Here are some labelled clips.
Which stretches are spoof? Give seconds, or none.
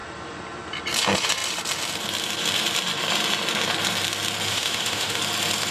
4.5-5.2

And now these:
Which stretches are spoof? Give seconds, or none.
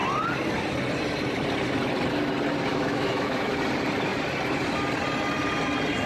2.7-3.5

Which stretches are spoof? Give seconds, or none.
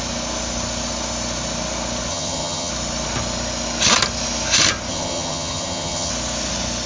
2.1-2.7; 4.9-6.1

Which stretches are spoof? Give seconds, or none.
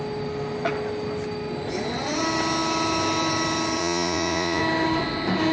3.8-4.6